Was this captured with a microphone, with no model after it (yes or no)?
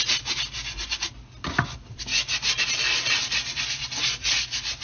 yes